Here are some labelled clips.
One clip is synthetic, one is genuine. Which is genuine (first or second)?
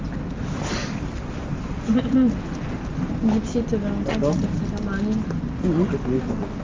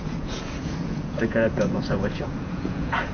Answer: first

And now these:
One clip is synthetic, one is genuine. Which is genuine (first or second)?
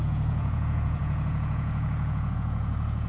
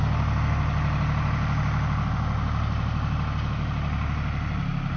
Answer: second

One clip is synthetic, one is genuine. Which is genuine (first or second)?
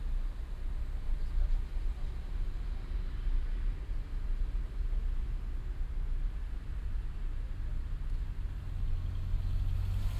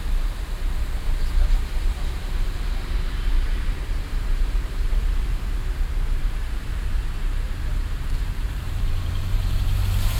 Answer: first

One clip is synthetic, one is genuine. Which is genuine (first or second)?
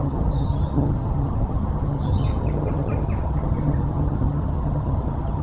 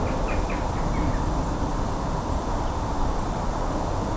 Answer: second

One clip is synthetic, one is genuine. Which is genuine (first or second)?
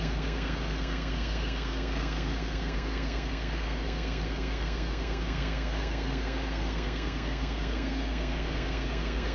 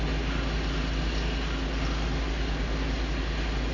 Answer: second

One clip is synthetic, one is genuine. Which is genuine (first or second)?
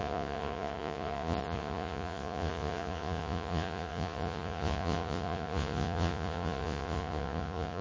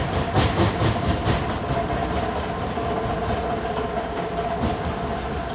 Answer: second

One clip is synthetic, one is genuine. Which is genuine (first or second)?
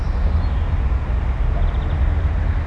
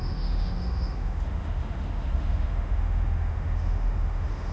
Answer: first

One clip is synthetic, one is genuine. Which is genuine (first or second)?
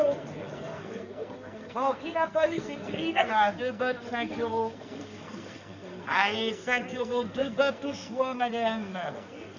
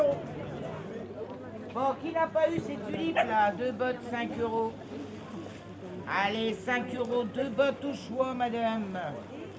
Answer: second